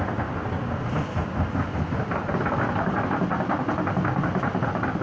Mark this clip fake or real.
real